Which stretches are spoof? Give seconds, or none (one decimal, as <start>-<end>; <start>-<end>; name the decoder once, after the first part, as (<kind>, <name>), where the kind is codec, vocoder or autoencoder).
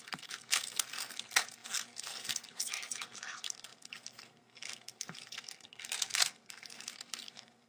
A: 0.0-7.7 (codec, SNAC)